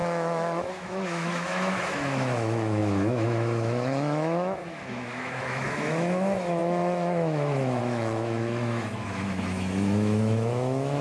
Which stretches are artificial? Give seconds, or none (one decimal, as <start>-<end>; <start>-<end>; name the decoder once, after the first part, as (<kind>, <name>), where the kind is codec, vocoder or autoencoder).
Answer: 0.0-11.0 (autoencoder, DAC-VAE)